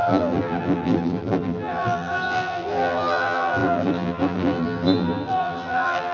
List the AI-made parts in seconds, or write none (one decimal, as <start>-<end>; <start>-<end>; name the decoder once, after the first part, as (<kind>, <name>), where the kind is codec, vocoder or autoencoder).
0.0-6.1 (vocoder, BigVGAN v2)